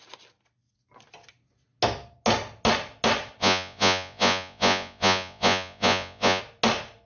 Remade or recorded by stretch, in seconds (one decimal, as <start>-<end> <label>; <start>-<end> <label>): 0.0-3.4 recorded; 3.4-6.4 remade; 6.4-7.1 recorded